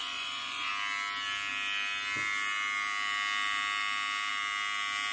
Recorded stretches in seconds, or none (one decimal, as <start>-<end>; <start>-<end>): 0.7-5.1